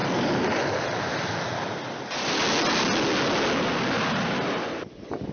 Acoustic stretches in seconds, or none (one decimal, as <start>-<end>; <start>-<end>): 0.0-5.3

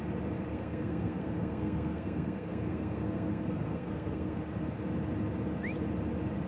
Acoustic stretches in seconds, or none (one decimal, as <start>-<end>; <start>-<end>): 0.0-0.5; 4.4-6.5

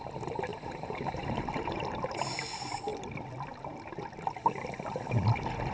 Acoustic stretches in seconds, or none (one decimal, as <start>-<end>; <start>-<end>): 0.0-0.5; 2.3-5.7